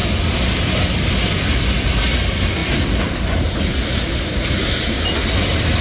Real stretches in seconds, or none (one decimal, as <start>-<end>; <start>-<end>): 0.0-5.8